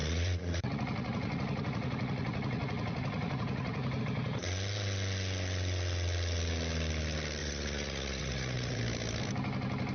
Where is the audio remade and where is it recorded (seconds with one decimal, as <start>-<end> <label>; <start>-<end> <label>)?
0.0-4.0 remade; 4.0-7.4 recorded; 7.4-8.8 remade; 8.8-9.9 recorded